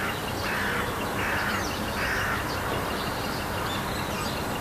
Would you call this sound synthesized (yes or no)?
no